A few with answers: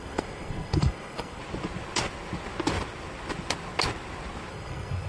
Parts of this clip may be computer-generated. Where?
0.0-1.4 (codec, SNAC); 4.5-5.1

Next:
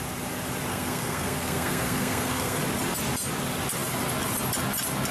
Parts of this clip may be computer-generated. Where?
0.7-2.6 (codec, SNAC)

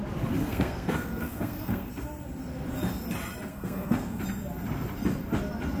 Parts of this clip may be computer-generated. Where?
0.4-1.9 (codec, SNAC); 3.5-4.2

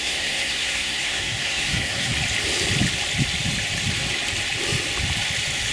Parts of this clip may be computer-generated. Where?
0.0-2.1 (codec, SNAC)

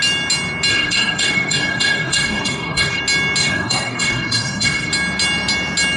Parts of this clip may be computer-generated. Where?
0.7-3.0 (codec, SNAC); 3.4-4.9